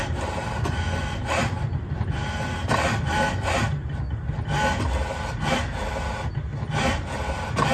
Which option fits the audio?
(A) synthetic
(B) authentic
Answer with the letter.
B